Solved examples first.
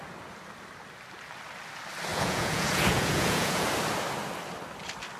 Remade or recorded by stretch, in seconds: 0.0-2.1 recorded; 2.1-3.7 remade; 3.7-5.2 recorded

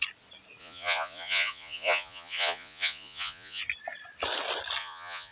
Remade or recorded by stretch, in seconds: 0.0-0.6 recorded; 0.6-3.6 remade; 3.6-4.8 recorded; 4.8-5.3 remade

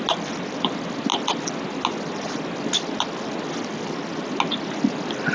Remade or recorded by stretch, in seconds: 0.0-5.3 recorded

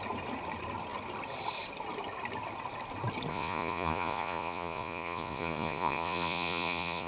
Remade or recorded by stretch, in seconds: 0.0-3.3 recorded; 3.3-7.1 remade

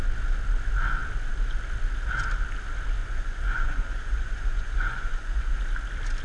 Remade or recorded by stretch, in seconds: 0.0-3.0 recorded; 3.0-5.6 remade; 5.6-6.2 recorded

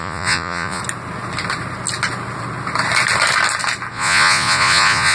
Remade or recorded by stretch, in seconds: 0.0-0.8 remade; 0.8-3.9 recorded; 3.9-5.1 remade

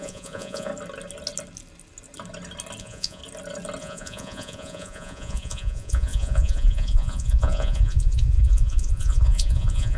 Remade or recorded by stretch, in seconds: 0.0-0.7 remade; 0.7-2.8 recorded; 2.8-3.2 remade; 3.2-3.8 recorded; 3.8-10.0 remade